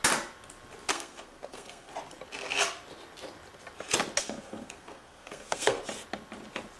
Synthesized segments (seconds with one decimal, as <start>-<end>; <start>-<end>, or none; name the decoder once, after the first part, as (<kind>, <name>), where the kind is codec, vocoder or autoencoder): 0.9-1.9 (codec, SNAC); 4.2-5.8